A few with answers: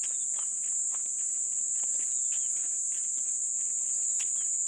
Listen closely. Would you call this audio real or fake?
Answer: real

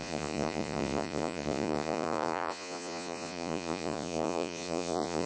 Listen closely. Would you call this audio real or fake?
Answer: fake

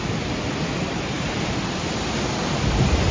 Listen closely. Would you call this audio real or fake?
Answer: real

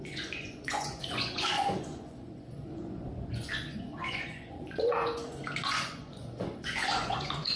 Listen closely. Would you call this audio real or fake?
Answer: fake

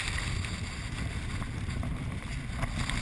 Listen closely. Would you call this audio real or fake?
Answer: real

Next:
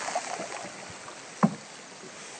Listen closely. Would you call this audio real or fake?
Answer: real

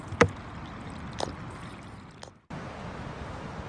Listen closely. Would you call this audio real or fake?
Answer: real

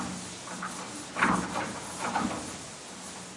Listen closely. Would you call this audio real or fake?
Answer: real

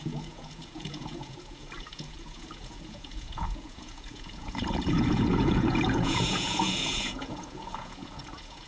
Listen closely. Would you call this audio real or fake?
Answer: fake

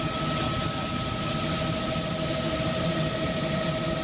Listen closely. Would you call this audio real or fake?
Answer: real